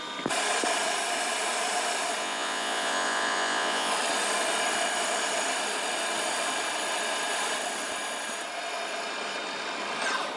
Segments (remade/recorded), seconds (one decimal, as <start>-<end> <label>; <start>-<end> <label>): 0.0-2.2 recorded; 2.2-3.9 remade; 3.9-10.4 recorded